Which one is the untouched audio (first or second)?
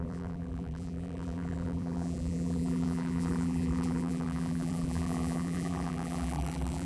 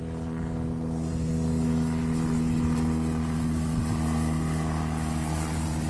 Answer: second